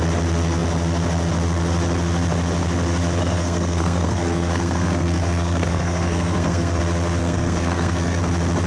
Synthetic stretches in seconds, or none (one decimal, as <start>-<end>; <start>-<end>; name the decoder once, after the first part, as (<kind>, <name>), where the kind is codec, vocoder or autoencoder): 3.2-6.8 (codec, SNAC); 7.2-8.2